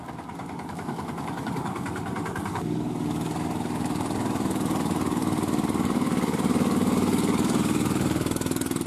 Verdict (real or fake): fake